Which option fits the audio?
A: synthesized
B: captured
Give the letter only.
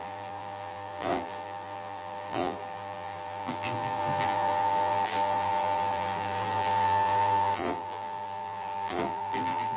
A